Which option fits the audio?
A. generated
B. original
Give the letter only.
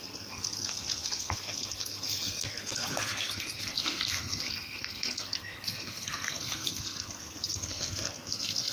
A